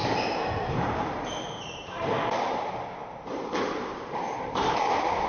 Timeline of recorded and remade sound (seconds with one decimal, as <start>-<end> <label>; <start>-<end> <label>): 0.0-5.3 remade